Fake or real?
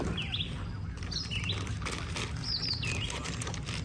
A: real